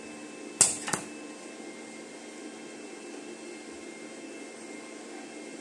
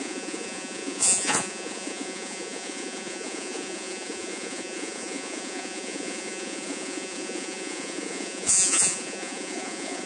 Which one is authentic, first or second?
first